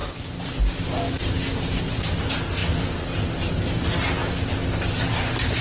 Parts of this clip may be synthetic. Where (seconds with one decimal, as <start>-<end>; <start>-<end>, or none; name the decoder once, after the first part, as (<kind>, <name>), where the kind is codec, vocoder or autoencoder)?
none